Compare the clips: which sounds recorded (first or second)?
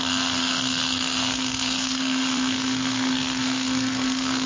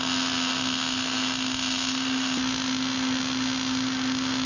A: second